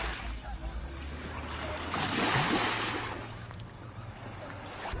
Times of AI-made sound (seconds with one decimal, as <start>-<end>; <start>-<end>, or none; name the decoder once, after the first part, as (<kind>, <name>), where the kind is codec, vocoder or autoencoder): none